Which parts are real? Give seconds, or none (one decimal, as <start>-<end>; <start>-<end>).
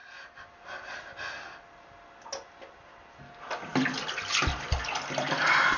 0.0-5.8